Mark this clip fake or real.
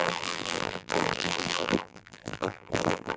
fake